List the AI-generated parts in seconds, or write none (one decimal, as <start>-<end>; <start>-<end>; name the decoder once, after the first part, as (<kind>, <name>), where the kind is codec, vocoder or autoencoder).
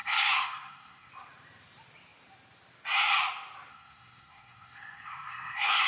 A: 0.0-1.1 (codec, SNAC); 3.7-5.9